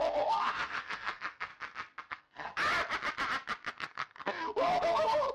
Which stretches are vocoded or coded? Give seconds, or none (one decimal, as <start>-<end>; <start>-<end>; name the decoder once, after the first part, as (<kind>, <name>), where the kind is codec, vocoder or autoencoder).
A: 0.0-1.5 (codec, SNAC); 2.1-2.5; 3.7-5.3